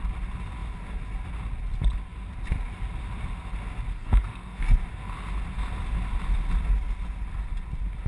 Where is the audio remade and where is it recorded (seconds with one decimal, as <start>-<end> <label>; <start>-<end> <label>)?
0.0-3.9 recorded; 3.9-4.6 remade; 4.6-8.1 recorded